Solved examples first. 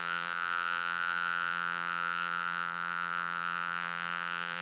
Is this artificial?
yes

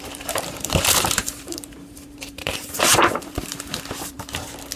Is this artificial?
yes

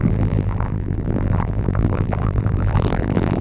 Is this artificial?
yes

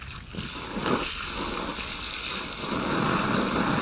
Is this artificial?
no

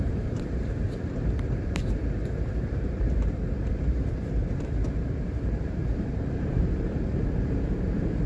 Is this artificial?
yes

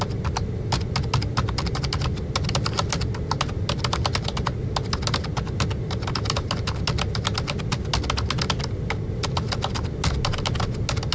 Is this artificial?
no